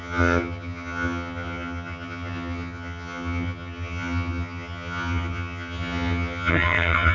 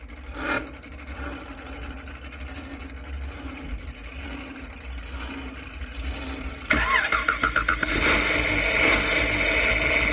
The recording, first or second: second